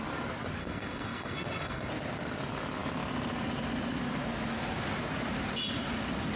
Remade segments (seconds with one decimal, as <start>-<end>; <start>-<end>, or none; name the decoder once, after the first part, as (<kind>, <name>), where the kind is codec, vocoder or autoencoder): 0.6-1.9 (codec, SNAC)